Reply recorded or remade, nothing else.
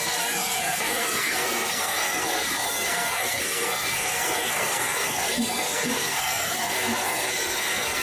remade